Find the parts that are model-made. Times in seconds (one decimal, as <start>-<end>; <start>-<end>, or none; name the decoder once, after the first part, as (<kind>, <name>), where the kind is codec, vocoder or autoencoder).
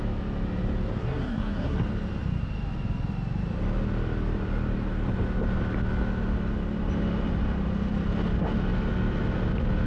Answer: 1.0-1.8 (codec, SNAC)